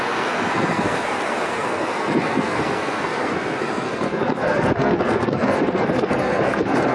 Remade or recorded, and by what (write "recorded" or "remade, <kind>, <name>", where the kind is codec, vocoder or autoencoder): remade, codec, SNAC